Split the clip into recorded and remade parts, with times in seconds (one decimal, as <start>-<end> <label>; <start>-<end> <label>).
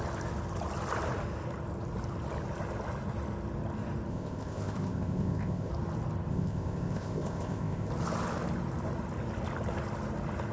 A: 0.0-4.1 recorded; 4.1-5.7 remade; 5.7-6.3 recorded; 6.3-7.9 remade; 7.9-10.5 recorded